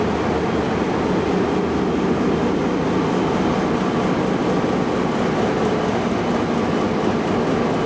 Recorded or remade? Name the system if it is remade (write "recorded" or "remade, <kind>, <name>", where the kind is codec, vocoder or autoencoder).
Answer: recorded